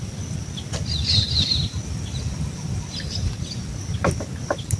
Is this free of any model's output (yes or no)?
yes